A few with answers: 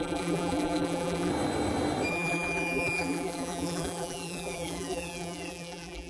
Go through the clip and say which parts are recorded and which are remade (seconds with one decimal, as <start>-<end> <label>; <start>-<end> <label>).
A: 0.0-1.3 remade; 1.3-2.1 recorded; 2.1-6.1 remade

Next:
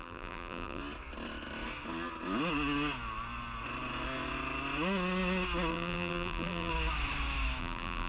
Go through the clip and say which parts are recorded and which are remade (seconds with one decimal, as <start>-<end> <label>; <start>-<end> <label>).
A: 0.0-0.8 remade; 0.8-5.7 recorded; 5.7-6.7 remade; 6.7-7.6 recorded; 7.6-8.1 remade

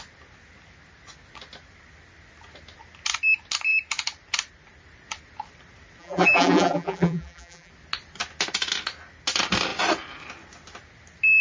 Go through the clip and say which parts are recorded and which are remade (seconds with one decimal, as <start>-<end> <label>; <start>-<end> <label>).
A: 0.0-6.0 recorded; 6.0-7.7 remade; 7.7-11.4 recorded

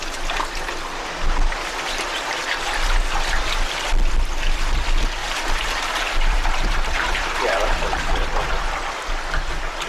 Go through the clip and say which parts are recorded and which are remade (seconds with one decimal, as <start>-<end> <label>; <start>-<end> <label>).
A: 0.0-5.2 recorded; 5.2-8.4 remade; 8.4-9.9 recorded

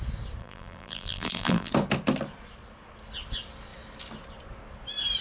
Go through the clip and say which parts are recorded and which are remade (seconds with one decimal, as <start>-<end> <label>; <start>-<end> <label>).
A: 0.0-0.4 recorded; 0.4-1.7 remade; 1.7-5.2 recorded

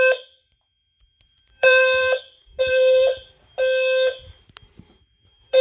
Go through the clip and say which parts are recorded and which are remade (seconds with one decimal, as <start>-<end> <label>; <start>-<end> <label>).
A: 0.0-3.1 remade; 3.1-4.8 recorded; 4.8-5.6 remade

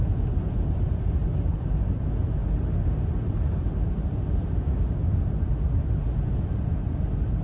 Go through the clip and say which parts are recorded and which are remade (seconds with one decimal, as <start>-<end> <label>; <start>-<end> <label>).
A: 0.0-1.2 recorded; 1.2-1.9 remade; 1.9-7.4 recorded